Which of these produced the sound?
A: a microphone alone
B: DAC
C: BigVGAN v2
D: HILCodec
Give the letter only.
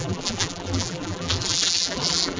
C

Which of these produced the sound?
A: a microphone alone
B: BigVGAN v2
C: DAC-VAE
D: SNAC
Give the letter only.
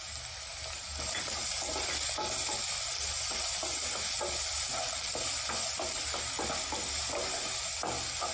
A